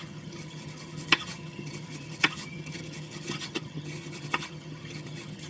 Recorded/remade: remade